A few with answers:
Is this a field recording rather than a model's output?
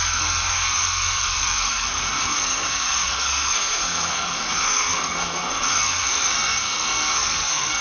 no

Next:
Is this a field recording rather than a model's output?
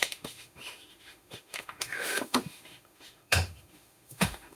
no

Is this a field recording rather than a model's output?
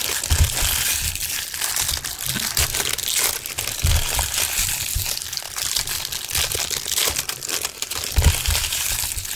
yes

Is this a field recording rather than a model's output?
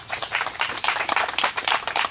no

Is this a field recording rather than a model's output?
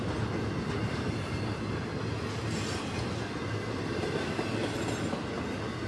yes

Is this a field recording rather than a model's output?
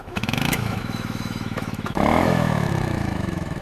no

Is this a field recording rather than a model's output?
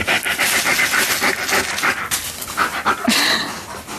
yes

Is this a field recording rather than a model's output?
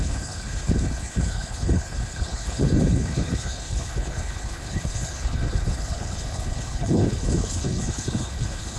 no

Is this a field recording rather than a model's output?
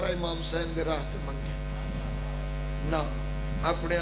yes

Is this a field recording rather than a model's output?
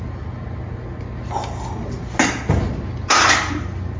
yes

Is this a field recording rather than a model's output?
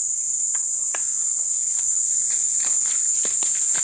yes